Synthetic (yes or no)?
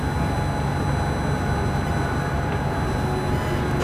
no